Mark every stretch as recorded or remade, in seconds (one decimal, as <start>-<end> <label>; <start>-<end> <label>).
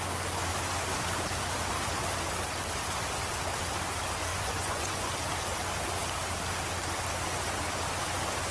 0.0-4.3 recorded; 4.3-5.1 remade; 5.1-8.5 recorded